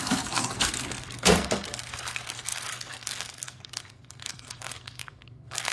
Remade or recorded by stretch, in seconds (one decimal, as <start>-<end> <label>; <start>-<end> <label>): 0.0-5.7 remade